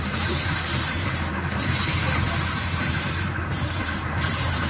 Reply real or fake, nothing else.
fake